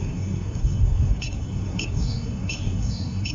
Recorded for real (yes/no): no